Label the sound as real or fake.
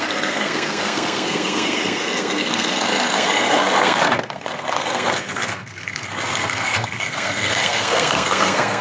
fake